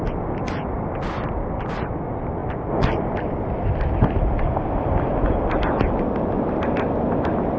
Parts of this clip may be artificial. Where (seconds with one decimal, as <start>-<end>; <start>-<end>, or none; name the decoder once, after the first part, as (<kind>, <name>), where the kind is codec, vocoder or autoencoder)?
none

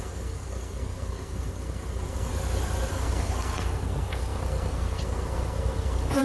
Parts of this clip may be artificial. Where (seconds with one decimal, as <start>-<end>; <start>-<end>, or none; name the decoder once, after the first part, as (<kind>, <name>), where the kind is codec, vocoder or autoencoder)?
0.0-2.3 (codec, SNAC); 2.9-6.2